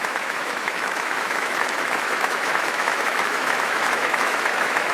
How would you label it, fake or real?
fake